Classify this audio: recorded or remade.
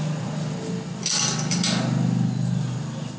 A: recorded